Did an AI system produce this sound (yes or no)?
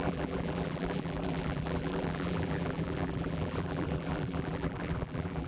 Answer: yes